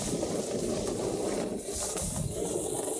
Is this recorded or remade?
recorded